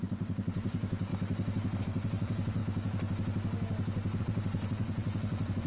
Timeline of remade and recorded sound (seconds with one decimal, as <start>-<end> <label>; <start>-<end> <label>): 0.0-1.1 remade; 1.1-1.8 recorded; 1.8-2.6 remade; 2.6-4.2 recorded; 4.2-5.7 remade